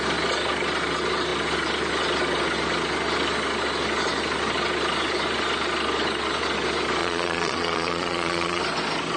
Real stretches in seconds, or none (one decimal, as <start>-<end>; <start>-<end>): 0.0-7.0; 8.6-9.2